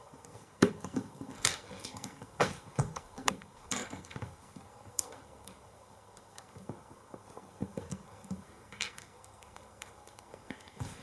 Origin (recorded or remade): remade